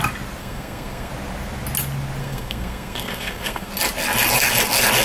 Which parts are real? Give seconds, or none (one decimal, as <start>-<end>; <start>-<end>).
0.0-0.4; 1.1-2.2; 3.7-5.0